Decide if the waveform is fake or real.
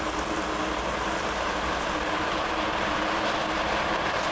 real